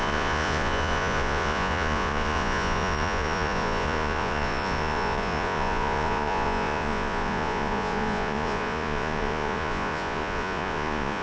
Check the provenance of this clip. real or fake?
fake